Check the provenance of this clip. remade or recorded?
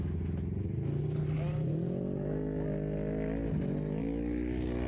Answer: recorded